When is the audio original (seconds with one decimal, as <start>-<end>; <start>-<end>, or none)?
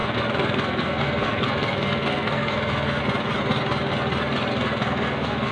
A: 3.0-4.5